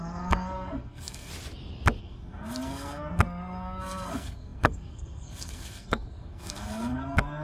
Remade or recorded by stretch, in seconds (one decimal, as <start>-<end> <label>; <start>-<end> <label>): 0.0-1.3 remade; 1.3-2.0 recorded; 2.0-7.4 remade